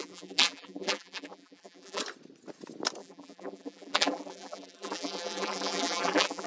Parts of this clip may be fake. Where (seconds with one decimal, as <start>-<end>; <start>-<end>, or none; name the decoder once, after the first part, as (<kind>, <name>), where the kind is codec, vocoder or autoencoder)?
0.0-2.0 (vocoder, BigVGAN v2); 3.0-6.5